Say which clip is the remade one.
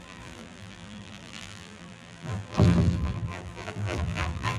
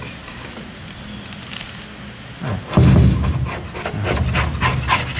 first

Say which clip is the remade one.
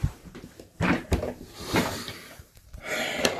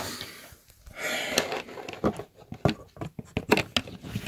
first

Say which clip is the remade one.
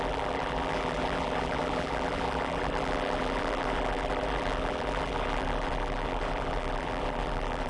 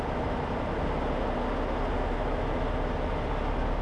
first